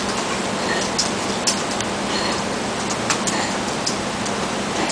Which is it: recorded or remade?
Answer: recorded